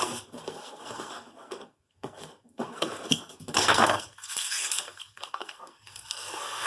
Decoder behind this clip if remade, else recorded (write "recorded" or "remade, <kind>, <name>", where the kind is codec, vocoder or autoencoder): remade, codec, SNAC